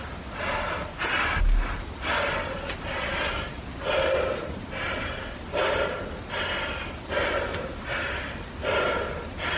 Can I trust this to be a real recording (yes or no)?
yes